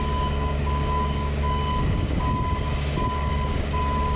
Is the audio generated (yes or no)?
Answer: yes